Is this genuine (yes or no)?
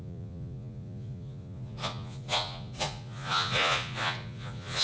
no